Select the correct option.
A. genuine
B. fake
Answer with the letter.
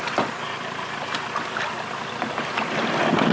A